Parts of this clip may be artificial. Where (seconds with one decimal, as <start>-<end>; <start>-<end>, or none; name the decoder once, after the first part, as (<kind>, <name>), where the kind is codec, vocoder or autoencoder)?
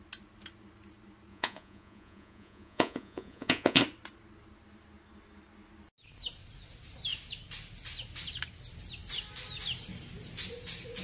1.3-3.8 (vocoder, Vocos)